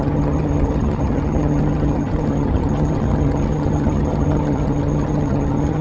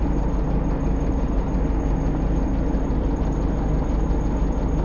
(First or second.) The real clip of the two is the second